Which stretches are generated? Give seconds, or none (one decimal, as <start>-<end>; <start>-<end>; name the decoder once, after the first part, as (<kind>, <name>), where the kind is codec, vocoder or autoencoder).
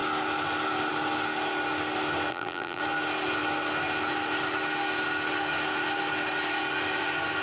2.3-2.8 (vocoder, BigVGAN v2)